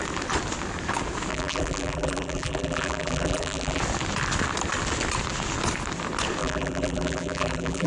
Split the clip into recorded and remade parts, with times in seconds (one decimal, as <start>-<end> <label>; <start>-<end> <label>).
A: 0.0-1.3 recorded; 1.3-3.8 remade; 3.8-6.4 recorded; 6.4-7.9 remade